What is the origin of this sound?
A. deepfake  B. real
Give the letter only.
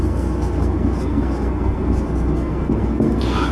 A